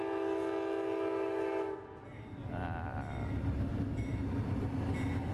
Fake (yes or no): no